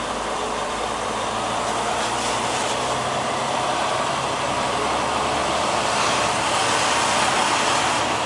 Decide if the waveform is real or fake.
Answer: fake